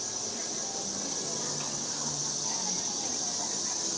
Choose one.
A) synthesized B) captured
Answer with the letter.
B